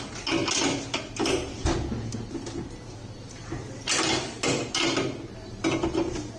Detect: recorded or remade recorded